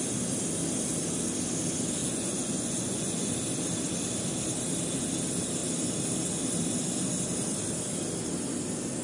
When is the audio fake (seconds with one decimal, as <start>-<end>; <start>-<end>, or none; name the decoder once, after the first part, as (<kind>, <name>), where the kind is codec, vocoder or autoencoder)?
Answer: 2.0-3.3 (vocoder, Vocos)